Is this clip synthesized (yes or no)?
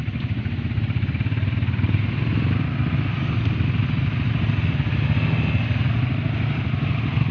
no